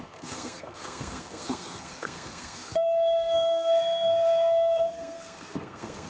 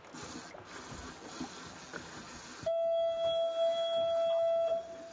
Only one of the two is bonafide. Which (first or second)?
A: second